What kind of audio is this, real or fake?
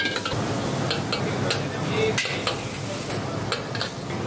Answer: real